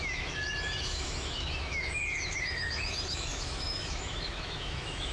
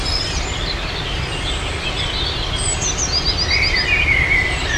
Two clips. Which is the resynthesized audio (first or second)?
first